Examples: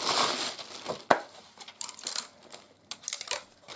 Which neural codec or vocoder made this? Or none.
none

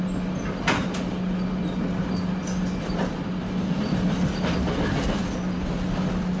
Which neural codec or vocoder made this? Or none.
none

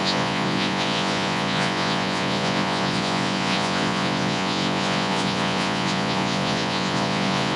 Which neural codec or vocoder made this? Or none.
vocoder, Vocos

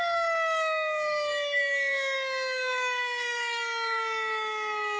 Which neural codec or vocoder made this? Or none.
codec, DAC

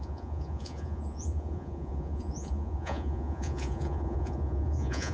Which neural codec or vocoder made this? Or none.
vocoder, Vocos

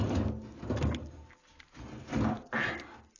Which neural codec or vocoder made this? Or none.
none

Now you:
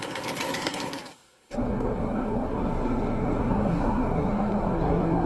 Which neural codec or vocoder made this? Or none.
codec, SNAC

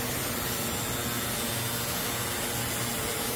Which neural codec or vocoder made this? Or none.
none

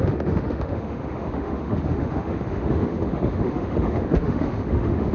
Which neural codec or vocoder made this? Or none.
autoencoder, DAC-VAE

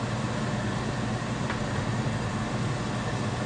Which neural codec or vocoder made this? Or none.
none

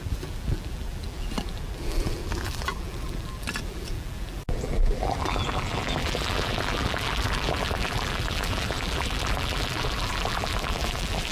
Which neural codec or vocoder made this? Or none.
vocoder, BigVGAN v2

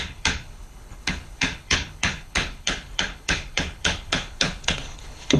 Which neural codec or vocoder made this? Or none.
codec, HILCodec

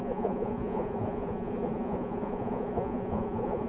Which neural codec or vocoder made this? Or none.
vocoder, Vocos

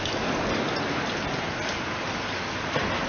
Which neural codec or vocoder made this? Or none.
none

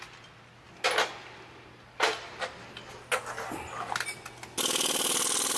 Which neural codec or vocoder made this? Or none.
none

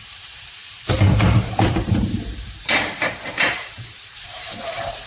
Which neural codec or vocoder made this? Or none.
vocoder, BigVGAN v2